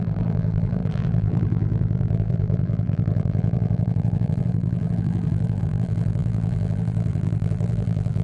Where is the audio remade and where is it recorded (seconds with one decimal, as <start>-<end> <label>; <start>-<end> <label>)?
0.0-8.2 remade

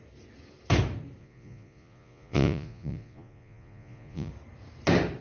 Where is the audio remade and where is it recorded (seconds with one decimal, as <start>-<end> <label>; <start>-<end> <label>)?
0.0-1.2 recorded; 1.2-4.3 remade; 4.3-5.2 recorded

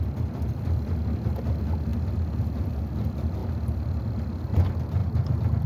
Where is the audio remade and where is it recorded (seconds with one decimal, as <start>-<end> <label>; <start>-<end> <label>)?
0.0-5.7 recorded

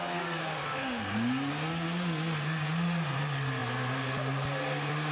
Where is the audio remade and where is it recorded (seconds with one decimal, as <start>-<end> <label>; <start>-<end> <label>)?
0.0-0.4 recorded; 0.4-1.0 remade; 1.0-5.1 recorded

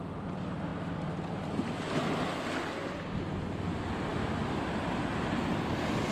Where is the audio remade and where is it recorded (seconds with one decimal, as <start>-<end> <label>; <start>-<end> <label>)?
0.0-6.1 recorded

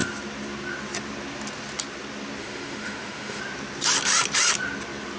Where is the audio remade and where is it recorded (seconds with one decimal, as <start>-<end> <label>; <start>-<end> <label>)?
0.0-2.4 recorded; 2.4-3.4 remade; 3.4-5.2 recorded

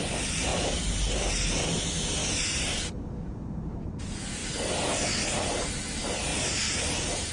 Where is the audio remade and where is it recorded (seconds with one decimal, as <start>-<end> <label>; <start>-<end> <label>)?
0.0-0.5 recorded; 0.5-1.5 remade; 1.5-6.3 recorded; 6.3-7.3 remade